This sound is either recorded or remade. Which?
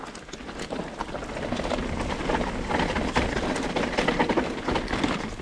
recorded